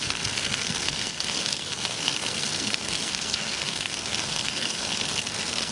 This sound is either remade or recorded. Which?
remade